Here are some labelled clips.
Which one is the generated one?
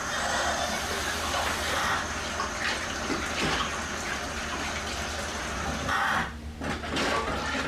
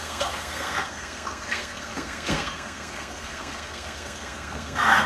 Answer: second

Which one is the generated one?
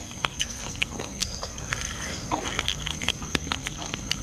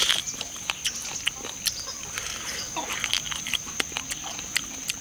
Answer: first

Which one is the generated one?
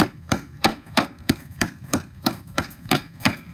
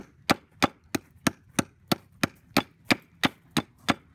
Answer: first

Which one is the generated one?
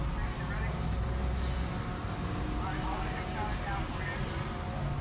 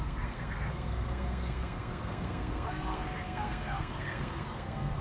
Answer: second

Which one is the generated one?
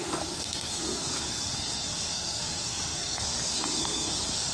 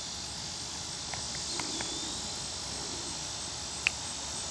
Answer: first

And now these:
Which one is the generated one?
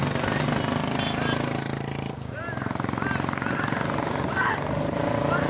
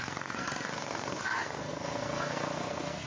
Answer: second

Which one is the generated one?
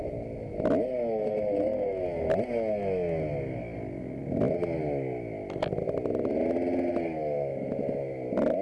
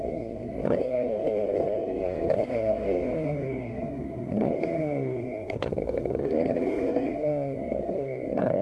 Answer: second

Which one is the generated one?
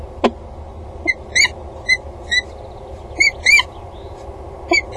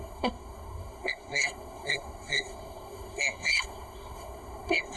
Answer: second